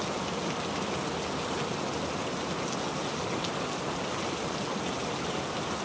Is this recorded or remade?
recorded